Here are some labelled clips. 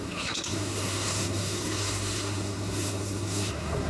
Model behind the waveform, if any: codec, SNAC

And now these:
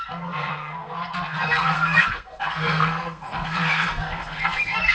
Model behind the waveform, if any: codec, SNAC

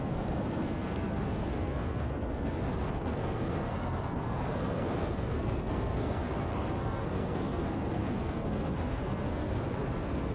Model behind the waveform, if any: codec, SNAC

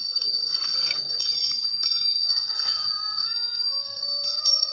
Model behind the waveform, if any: codec, SNAC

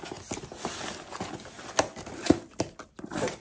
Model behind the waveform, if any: none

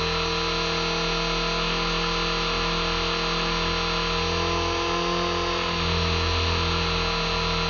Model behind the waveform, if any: none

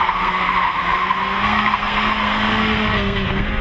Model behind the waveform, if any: codec, SNAC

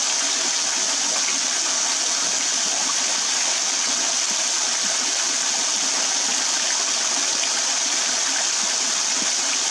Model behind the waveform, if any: none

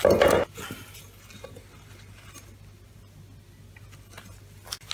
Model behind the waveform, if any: none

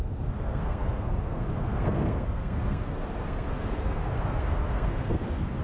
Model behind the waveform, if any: codec, SNAC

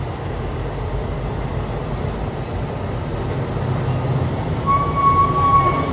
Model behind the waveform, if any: none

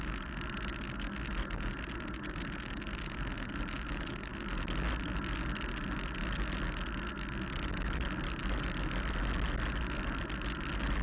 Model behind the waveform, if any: none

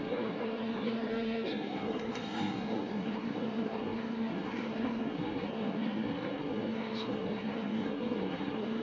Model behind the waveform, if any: codec, SNAC